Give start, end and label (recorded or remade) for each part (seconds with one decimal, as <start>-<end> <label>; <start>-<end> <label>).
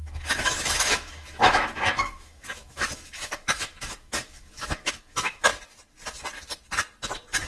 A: 0.0-5.5 remade; 5.5-7.5 recorded